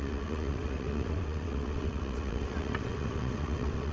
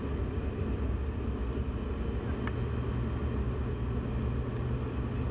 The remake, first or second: first